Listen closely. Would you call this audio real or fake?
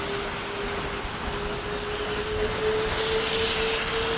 real